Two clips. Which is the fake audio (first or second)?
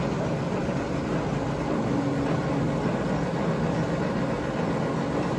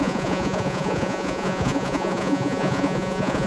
second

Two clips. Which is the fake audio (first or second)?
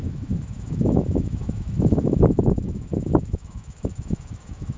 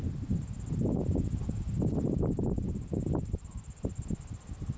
first